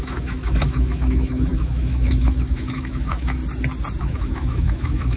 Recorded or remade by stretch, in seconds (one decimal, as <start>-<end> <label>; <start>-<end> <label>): 0.0-3.4 remade; 3.4-4.0 recorded; 4.0-5.2 remade